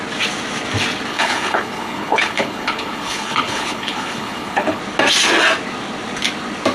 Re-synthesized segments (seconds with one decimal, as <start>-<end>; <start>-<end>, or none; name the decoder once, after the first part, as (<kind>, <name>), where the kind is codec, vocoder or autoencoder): 1.1-4.8 (codec, HILCodec)